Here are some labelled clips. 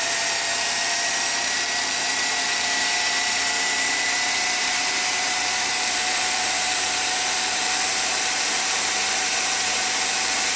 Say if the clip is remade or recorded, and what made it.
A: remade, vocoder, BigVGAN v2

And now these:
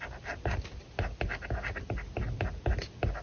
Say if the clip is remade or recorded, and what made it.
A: recorded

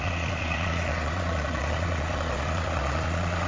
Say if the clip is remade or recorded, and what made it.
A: remade, vocoder, Vocos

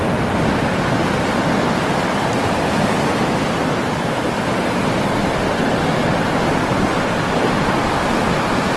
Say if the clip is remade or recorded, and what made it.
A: recorded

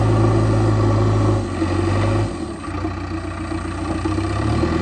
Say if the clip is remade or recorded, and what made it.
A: recorded